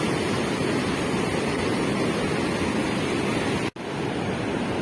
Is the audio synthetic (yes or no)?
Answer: no